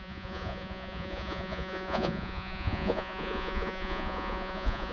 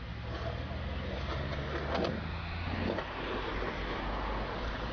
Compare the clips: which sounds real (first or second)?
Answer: second